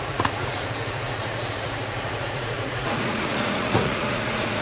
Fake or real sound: fake